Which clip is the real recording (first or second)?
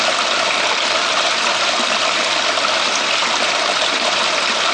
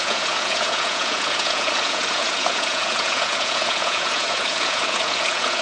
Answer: first